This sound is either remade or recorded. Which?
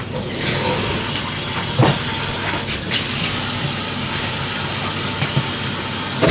remade